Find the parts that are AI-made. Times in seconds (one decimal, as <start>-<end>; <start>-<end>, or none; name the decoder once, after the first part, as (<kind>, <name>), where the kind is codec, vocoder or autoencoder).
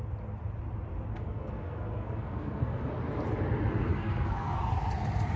1.1-2.9 (codec, SNAC); 3.9-4.6